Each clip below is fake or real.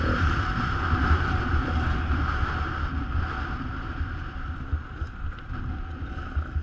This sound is real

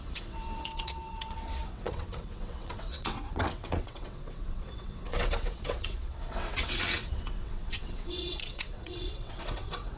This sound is fake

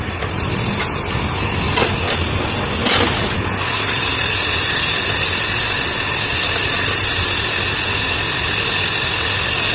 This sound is real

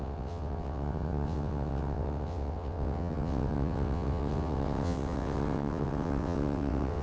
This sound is fake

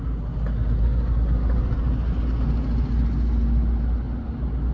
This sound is real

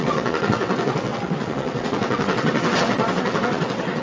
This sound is fake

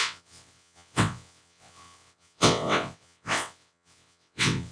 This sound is fake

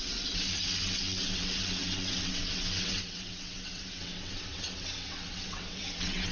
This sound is fake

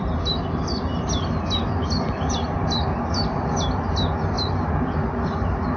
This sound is real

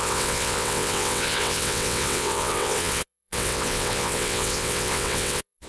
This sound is fake